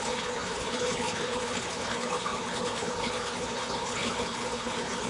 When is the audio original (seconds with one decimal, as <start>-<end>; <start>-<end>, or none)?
none

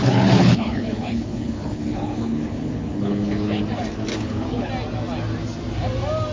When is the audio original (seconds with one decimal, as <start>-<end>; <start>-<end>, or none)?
3.6-4.1; 4.7-6.3

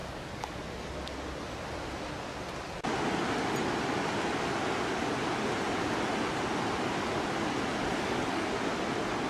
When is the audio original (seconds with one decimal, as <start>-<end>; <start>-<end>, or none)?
0.9-7.9; 8.5-9.3

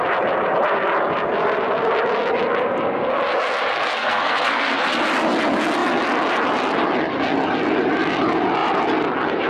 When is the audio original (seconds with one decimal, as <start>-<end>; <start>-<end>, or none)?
0.0-3.7; 4.9-9.5

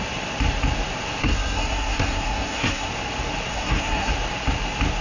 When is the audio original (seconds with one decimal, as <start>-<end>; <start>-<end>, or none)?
0.0-1.2; 2.9-3.5; 4.1-5.0